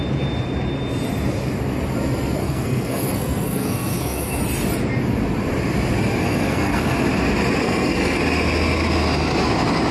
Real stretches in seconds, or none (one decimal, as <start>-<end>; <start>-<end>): 0.0-2.4; 4.4-6.2; 7.0-7.6; 8.2-9.9